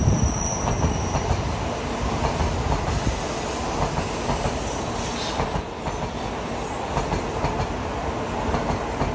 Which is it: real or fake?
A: real